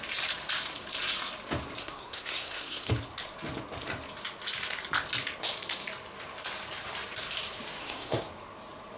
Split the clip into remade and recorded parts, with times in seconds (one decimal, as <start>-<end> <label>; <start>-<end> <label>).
0.0-1.8 recorded; 1.8-2.9 remade; 2.9-7.8 recorded; 7.8-8.3 remade; 8.3-9.0 recorded